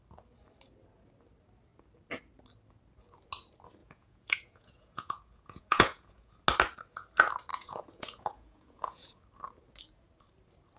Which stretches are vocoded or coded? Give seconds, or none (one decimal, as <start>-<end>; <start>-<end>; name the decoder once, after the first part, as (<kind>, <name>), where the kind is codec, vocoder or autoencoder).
3.8-6.3 (vocoder, Vocos); 7.5-9.2